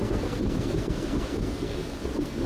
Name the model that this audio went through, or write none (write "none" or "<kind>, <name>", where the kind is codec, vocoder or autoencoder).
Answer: codec, SNAC